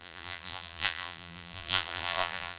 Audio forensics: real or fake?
fake